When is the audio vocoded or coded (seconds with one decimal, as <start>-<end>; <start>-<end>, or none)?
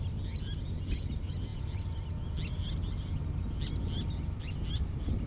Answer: none